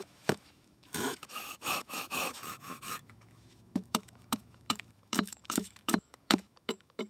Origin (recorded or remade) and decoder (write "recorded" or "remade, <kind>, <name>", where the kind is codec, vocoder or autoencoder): remade, autoencoder, DAC-VAE